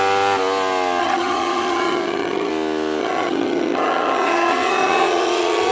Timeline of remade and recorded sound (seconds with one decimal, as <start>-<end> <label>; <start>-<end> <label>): 0.0-1.0 recorded; 1.0-2.5 remade; 2.5-3.0 recorded; 3.0-5.7 remade